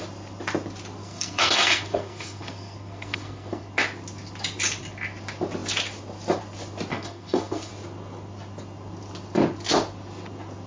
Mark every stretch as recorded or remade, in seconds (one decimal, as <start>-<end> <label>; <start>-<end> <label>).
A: 0.0-1.0 recorded; 1.0-3.7 remade; 3.7-6.9 recorded; 6.9-7.7 remade; 7.7-10.7 recorded